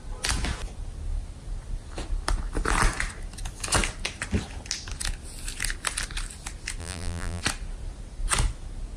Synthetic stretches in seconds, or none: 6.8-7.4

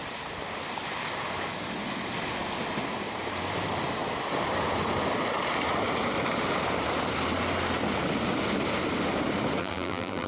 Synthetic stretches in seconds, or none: 9.6-10.3

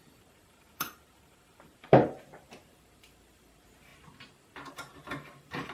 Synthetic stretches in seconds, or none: 0.0-3.9; 4.7-5.7